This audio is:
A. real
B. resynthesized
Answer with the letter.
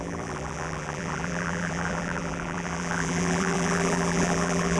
B